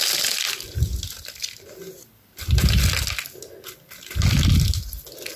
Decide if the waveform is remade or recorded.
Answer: recorded